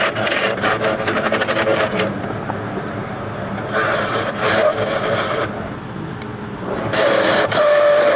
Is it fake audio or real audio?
fake